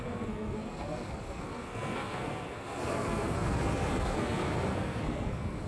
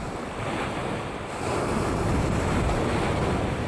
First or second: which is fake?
first